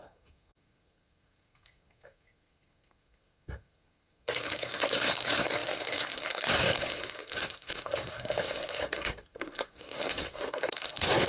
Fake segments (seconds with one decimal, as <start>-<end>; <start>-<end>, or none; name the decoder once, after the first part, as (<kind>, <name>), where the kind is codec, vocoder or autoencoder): 0.0-11.3 (codec, SNAC)